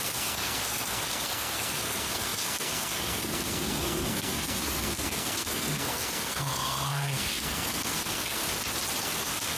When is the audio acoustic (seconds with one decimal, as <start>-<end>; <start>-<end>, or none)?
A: 8.4-9.0